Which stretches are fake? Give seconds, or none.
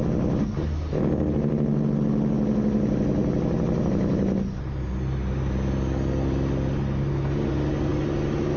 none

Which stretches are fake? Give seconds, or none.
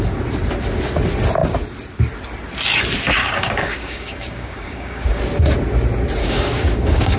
3.2-5.2 (codec, DAC); 6.2-7.2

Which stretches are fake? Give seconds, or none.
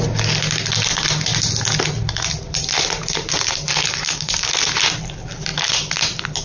3.7-4.5 (codec, DAC)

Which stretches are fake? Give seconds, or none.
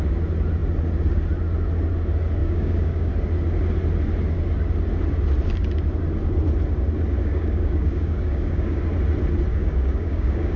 2.4-3.1 (codec, DAC); 7.2-8.8; 9.5-10.6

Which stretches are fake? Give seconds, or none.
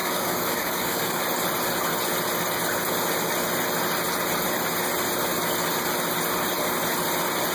0.0-1.2 (codec, DAC)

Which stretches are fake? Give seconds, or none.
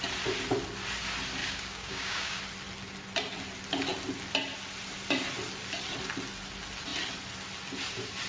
1.4-2.4 (codec, DAC)